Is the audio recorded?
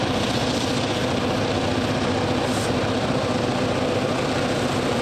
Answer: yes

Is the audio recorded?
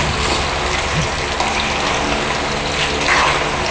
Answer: yes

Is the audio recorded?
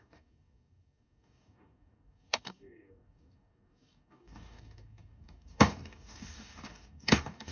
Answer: no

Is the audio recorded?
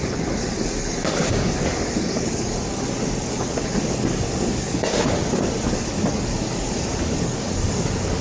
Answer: no